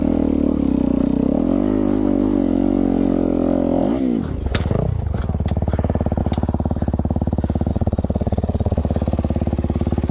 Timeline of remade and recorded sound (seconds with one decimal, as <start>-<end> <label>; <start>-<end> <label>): 0.0-7.7 recorded; 7.7-8.8 remade; 8.8-10.1 recorded